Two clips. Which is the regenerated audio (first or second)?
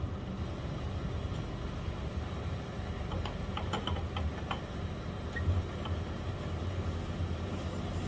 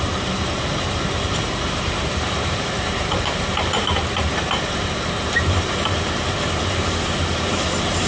second